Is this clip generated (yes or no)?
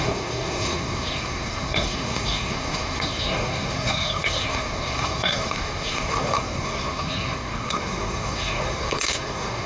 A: yes